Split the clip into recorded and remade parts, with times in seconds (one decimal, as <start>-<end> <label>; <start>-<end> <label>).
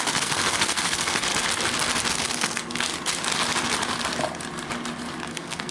0.0-1.3 remade; 1.3-2.1 recorded; 2.1-2.9 remade; 2.9-5.3 recorded; 5.3-5.7 remade